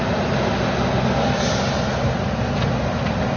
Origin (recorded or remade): recorded